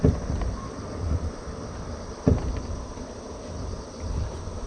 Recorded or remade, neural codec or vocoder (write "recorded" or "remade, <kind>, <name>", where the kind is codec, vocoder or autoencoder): recorded